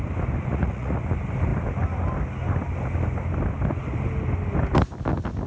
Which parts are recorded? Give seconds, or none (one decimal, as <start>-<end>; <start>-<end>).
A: 0.0-0.5; 1.0-5.5